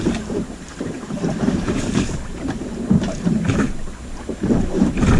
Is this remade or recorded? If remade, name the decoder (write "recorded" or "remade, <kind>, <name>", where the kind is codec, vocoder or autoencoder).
remade, vocoder, BigVGAN v2